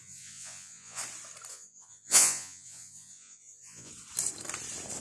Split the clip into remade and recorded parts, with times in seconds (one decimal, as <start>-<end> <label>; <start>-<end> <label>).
0.0-1.0 remade; 1.0-1.5 recorded; 1.5-3.9 remade; 3.9-5.0 recorded

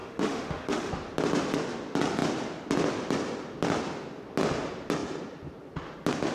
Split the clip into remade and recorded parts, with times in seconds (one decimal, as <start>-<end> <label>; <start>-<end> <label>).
0.0-0.9 remade; 0.9-6.3 recorded